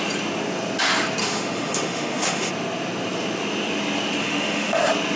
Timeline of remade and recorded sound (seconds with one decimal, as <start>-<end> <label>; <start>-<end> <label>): 0.0-1.2 recorded; 1.2-2.5 remade; 2.5-4.2 recorded; 4.2-4.8 remade; 4.8-5.2 recorded